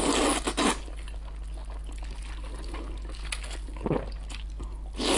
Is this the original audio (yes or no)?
yes